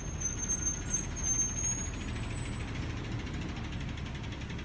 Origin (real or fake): real